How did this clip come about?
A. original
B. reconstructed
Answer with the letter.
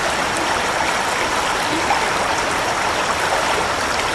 A